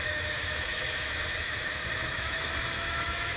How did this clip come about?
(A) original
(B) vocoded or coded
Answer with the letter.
B